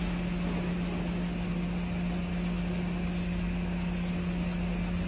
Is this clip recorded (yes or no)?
yes